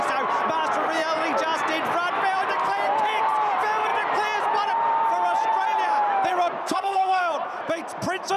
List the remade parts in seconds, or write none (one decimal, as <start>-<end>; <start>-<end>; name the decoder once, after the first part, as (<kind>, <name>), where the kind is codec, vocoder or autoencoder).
6.6-7.2 (codec, SNAC)